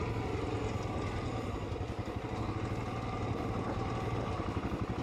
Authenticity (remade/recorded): recorded